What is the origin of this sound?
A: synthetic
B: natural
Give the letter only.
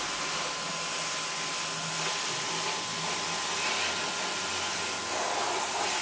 B